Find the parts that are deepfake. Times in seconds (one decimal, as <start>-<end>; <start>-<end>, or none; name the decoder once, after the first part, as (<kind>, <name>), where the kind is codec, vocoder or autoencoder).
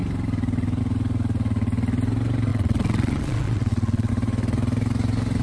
2.5-4.1 (vocoder, Vocos)